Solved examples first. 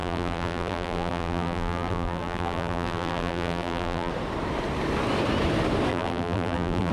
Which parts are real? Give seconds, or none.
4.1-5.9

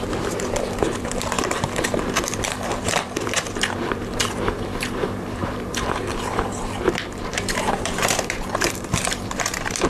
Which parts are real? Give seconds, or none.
none

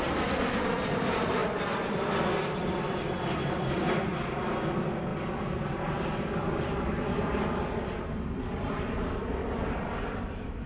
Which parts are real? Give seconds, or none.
0.0-10.7